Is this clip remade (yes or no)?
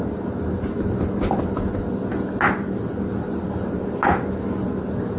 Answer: no